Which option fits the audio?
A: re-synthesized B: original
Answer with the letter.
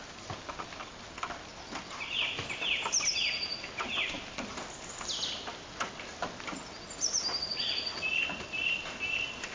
B